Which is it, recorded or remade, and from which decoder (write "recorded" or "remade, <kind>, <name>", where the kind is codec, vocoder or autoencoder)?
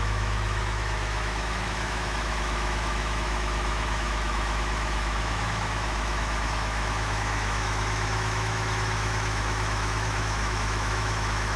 remade, autoencoder, DAC-VAE